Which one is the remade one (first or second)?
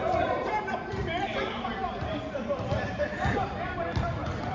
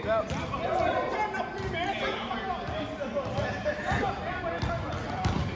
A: first